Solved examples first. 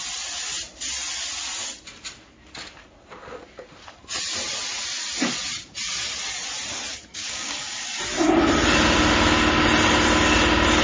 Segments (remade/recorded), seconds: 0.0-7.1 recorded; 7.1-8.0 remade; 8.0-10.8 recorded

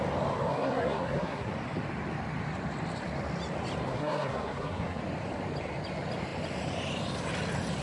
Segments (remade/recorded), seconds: 0.0-0.5 recorded; 0.5-1.5 remade; 1.5-3.9 recorded; 3.9-5.0 remade; 5.0-7.8 recorded

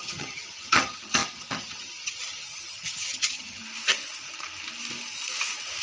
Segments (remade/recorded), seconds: 0.0-3.6 remade; 3.6-5.8 recorded

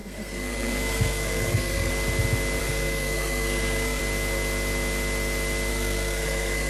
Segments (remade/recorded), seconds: 0.0-1.9 remade; 1.9-2.6 recorded; 2.6-4.0 remade; 4.0-5.7 recorded; 5.7-6.7 remade

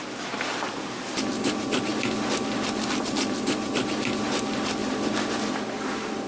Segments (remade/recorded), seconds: 0.0-6.3 recorded

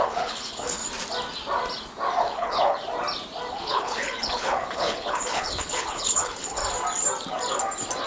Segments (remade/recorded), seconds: 0.0-0.8 remade; 0.8-2.2 recorded; 2.2-2.8 remade; 2.8-3.5 recorded; 3.5-6.6 remade; 6.6-8.1 recorded

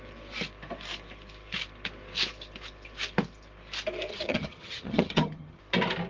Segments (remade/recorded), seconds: 0.0-4.1 recorded; 4.1-5.6 remade; 5.6-6.1 recorded